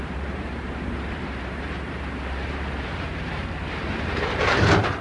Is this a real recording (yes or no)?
no